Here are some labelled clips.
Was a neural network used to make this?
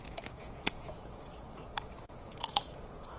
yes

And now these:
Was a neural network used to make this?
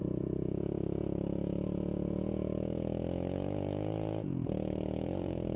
yes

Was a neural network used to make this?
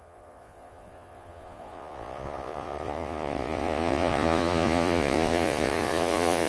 yes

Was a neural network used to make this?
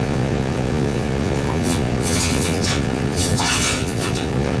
yes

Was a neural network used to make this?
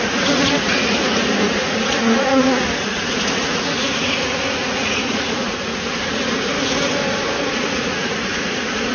yes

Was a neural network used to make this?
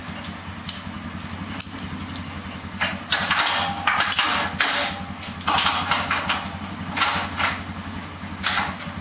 no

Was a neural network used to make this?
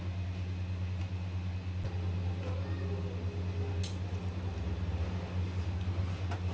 no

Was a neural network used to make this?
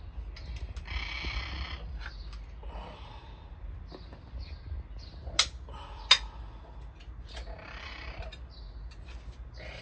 no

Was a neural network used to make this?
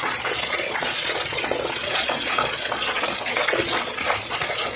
yes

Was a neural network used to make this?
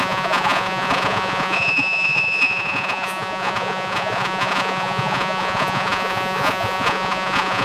yes